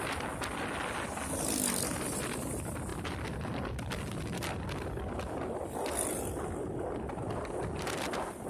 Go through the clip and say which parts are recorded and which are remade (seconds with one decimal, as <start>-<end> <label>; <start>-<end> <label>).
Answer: 0.0-8.5 recorded